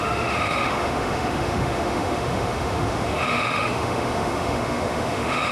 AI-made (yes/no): yes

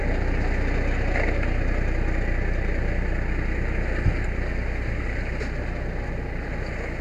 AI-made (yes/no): no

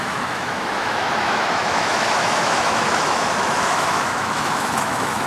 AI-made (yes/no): yes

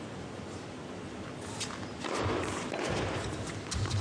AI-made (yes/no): no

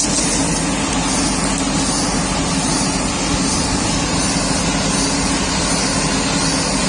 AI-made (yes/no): no